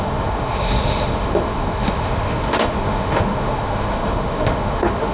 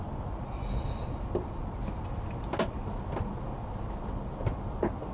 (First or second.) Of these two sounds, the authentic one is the second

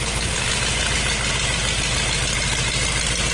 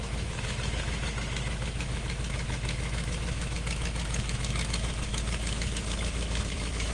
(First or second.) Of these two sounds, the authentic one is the first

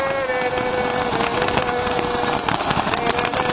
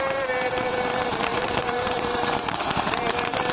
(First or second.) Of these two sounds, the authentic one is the first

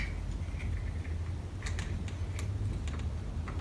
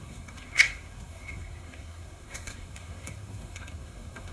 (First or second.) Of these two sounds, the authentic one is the first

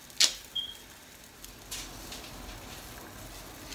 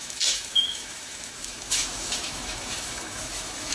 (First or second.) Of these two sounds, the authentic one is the first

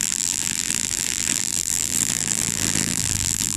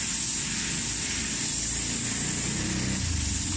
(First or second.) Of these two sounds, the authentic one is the second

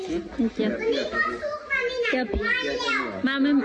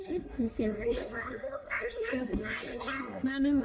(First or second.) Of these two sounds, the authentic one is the first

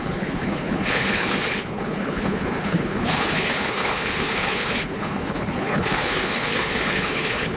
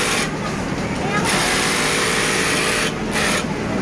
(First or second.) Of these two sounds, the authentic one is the second